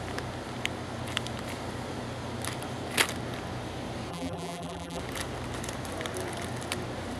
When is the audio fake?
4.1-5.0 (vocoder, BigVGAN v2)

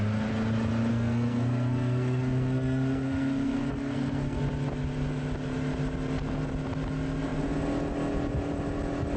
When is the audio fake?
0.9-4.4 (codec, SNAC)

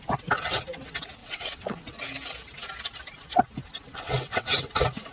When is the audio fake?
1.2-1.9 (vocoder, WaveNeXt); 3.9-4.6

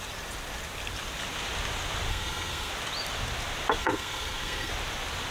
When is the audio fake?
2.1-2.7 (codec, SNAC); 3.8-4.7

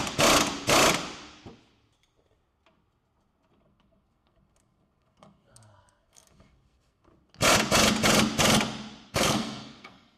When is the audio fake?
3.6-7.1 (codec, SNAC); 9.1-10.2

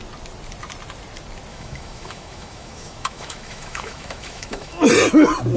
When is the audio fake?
1.5-4.9 (autoencoder, DAC-VAE)